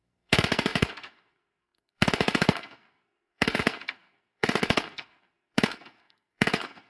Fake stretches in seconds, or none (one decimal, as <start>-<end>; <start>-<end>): 0.0-6.9